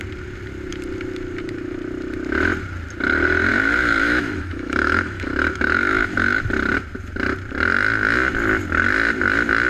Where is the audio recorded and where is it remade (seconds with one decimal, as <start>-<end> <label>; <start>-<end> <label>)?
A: 0.0-3.5 recorded; 3.5-6.4 remade; 6.4-9.7 recorded